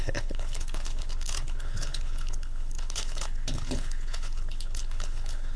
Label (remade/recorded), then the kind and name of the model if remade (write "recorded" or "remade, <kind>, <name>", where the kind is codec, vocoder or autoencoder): remade, codec, HILCodec